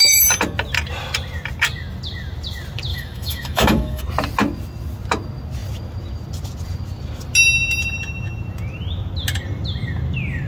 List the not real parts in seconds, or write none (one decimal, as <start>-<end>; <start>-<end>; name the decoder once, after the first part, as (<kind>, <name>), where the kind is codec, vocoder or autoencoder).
2.9-4.0 (autoencoder, DAC-VAE)